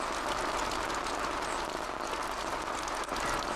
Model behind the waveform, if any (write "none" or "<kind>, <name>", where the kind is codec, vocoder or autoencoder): none